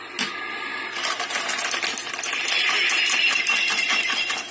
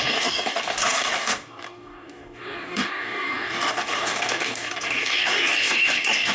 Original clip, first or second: first